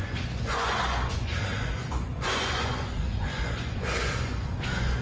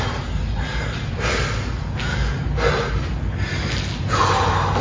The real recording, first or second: second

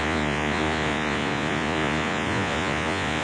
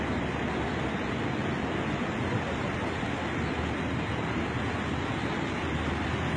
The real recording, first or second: second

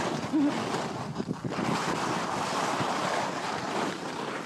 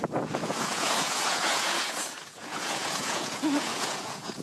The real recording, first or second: first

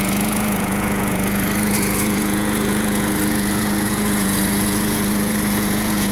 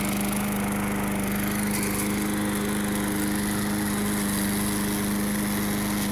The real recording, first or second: second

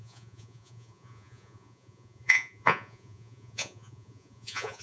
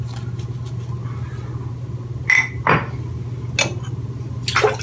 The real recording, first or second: second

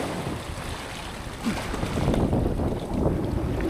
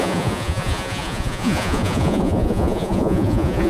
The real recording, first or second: first